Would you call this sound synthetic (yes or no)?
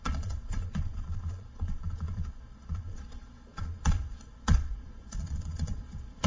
yes